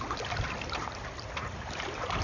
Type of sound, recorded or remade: recorded